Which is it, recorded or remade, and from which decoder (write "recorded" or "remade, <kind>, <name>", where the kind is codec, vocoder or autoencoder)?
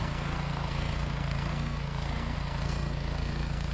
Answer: remade, codec, SNAC